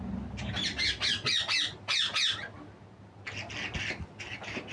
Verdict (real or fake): real